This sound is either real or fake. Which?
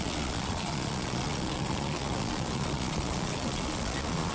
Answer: fake